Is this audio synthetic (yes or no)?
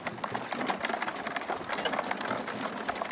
no